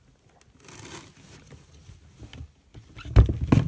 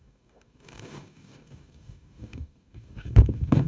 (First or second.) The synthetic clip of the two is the second